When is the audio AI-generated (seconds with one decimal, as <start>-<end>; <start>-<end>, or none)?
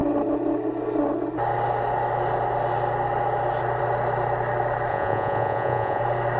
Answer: 4.9-6.0